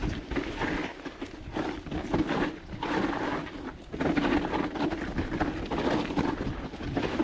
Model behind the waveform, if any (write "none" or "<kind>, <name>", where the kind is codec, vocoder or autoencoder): none